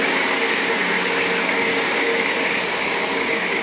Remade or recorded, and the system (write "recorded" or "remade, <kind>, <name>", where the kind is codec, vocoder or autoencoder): remade, codec, DAC